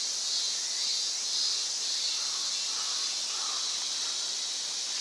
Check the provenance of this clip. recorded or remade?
recorded